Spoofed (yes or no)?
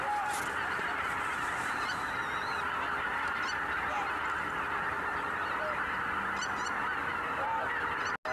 no